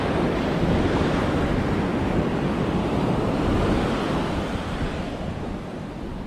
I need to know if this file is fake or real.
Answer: real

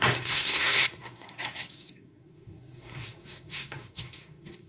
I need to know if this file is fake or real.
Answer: fake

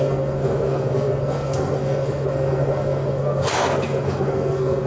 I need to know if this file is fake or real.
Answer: fake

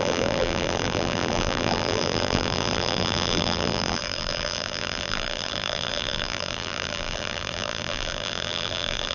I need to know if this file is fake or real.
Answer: fake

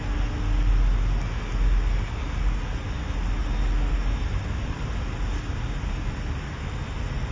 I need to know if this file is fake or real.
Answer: real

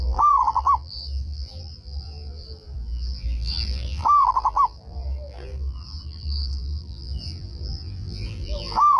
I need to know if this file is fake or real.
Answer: fake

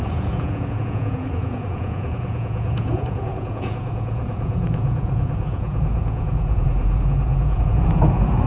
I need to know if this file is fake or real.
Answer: fake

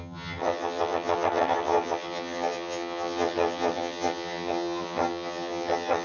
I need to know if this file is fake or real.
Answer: fake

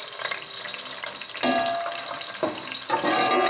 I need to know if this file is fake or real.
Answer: real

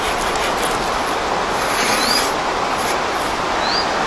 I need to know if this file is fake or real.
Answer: real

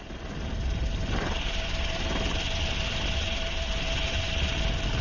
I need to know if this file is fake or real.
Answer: real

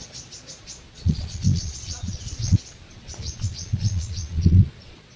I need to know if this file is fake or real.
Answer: fake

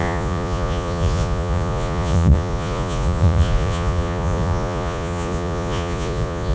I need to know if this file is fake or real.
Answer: fake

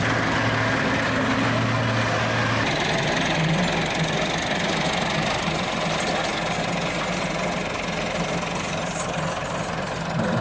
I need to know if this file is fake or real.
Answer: real